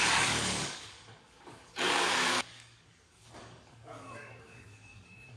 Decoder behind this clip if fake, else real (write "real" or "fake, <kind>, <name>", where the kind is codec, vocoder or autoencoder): fake, codec, DAC